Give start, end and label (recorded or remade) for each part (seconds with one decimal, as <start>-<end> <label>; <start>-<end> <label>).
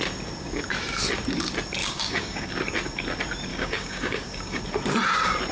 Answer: 0.0-1.8 recorded; 1.8-2.5 remade; 2.5-3.5 recorded; 3.5-4.6 remade; 4.6-5.5 recorded